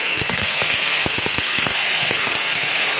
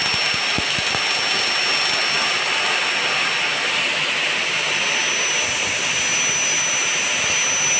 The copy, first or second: first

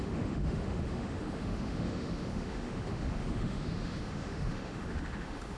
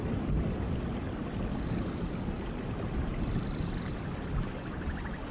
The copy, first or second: first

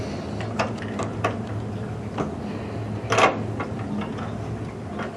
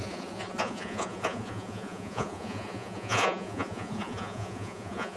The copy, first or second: second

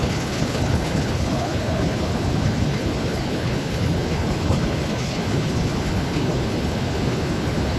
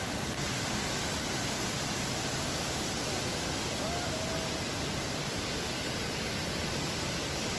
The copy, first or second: first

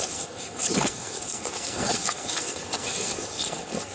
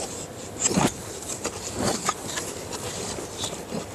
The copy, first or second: first